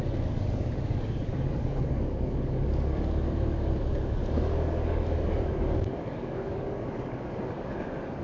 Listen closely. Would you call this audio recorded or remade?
remade